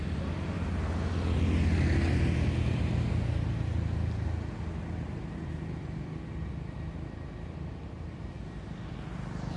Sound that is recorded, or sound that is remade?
recorded